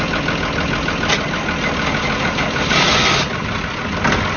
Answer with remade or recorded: recorded